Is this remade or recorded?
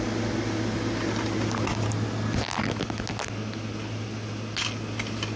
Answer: recorded